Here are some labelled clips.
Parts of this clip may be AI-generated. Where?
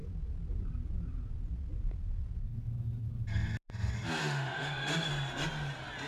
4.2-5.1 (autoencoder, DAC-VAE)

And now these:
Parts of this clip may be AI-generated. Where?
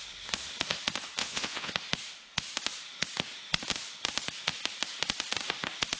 1.2-1.7 (vocoder, Vocos)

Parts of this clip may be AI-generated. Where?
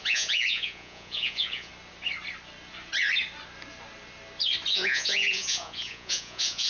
0.0-1.7 (vocoder, Vocos); 4.7-6.7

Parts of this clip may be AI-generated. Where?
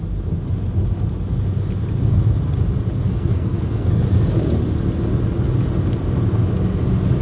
3.0-4.0 (codec, SNAC)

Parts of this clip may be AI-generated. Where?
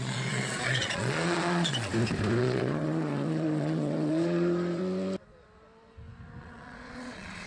0.0-1.9 (vocoder, Vocos); 2.4-4.8; 6.4-7.5